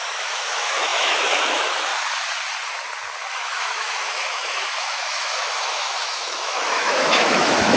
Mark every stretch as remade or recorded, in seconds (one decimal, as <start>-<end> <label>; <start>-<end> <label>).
0.0-1.9 remade; 1.9-3.3 recorded; 3.3-7.8 remade